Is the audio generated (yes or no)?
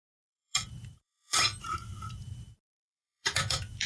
yes